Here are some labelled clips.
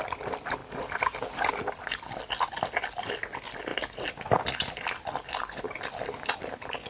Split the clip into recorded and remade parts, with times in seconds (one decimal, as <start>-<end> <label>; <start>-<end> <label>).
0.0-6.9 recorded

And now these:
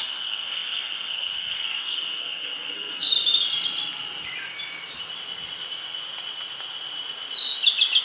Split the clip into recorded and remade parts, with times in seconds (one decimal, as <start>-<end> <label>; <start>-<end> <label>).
0.0-3.1 remade; 3.1-8.0 recorded

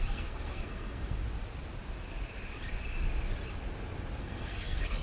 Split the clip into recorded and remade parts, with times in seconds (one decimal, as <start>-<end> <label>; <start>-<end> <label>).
0.0-1.2 remade; 1.2-4.2 recorded; 4.2-5.0 remade